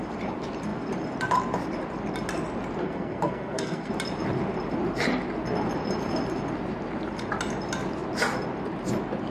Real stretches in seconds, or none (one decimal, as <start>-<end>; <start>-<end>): 0.0-2.8; 3.9-9.3